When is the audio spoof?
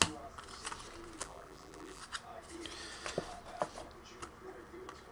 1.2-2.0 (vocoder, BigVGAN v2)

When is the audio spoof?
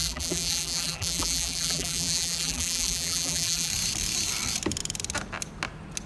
0.0-3.7 (vocoder, BigVGAN v2)